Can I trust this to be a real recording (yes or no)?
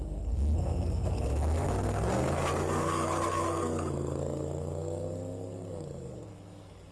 no